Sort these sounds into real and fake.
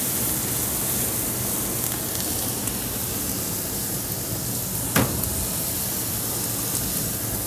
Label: real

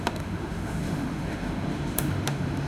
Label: fake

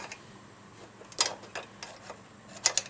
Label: real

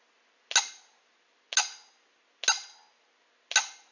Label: real